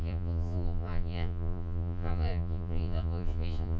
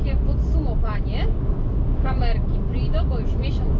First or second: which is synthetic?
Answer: first